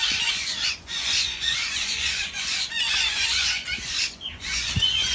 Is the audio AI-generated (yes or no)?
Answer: yes